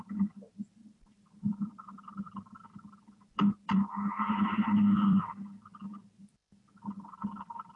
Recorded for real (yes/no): no